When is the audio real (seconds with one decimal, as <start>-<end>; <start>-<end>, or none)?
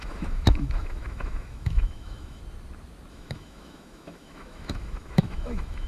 2.4-3.1